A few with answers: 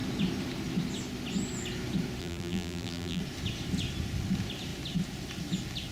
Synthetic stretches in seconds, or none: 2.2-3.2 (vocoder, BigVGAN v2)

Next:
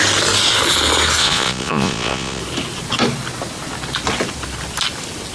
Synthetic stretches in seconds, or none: 1.2-2.4 (vocoder, Vocos)